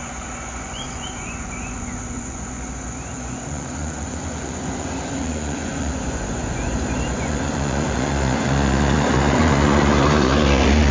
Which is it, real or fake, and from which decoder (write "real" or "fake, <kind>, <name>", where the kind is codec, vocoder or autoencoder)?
fake, vocoder, Vocos